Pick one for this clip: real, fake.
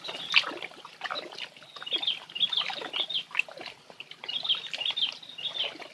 real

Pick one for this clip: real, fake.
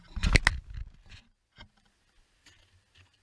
real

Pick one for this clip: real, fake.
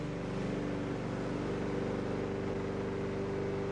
real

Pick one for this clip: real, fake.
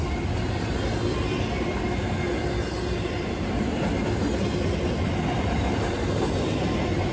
real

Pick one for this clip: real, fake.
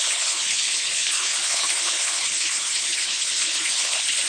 fake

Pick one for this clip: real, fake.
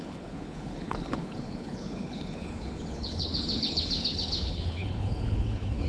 fake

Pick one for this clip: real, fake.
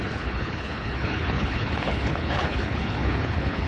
fake